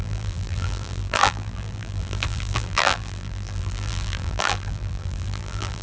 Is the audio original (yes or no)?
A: no